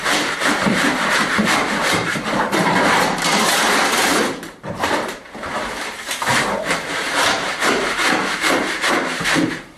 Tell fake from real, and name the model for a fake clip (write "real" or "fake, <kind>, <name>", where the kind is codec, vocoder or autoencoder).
fake, vocoder, BigVGAN v2